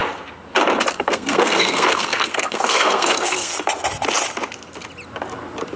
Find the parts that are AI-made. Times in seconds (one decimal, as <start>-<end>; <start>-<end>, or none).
0.9-3.5